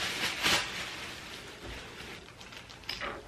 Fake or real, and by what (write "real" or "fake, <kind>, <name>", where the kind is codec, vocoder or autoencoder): real